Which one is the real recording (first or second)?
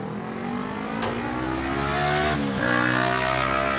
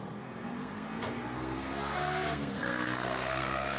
first